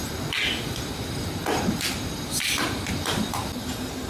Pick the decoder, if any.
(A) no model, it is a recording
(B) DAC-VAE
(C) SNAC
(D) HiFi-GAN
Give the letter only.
A